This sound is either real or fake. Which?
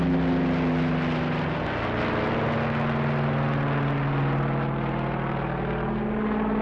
real